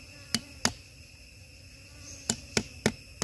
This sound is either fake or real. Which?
real